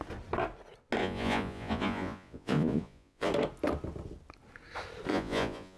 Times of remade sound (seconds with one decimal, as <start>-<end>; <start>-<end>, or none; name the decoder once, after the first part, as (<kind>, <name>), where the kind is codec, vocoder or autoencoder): 1.0-3.3 (vocoder, Vocos); 5.1-5.8